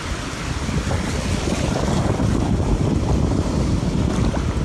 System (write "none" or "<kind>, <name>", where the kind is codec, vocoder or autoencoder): vocoder, BigVGAN v2